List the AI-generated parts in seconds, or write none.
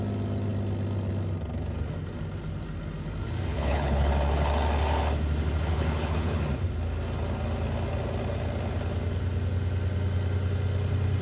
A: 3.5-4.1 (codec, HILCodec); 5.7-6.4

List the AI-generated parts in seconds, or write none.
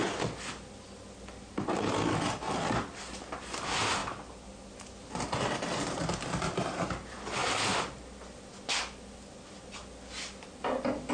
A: none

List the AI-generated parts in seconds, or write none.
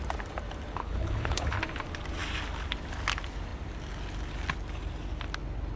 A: 0.8-1.6 (codec, HILCodec)